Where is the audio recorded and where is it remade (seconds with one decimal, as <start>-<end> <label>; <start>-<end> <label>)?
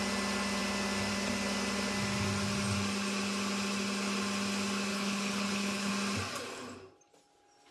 0.0-4.9 recorded; 4.9-5.9 remade; 5.9-7.7 recorded